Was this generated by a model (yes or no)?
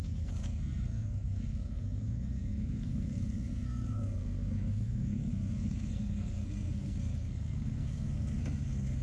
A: yes